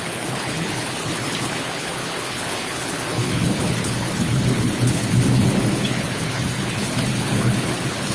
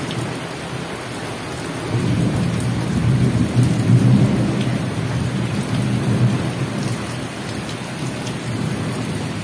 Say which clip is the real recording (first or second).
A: second